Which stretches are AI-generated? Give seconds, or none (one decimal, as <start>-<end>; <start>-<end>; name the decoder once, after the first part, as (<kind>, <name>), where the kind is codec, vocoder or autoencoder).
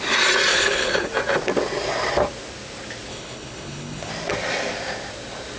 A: 0.5-1.1 (codec, HILCodec); 3.1-4.1